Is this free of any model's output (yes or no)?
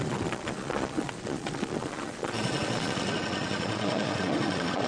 no